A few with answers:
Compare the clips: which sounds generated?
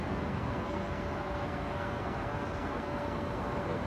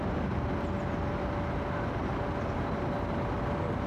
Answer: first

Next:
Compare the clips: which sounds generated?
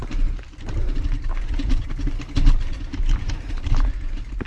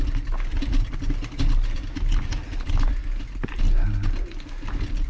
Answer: first